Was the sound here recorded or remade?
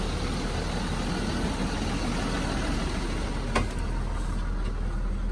recorded